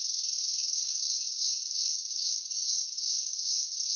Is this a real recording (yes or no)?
no